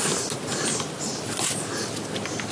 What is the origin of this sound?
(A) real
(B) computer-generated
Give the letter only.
A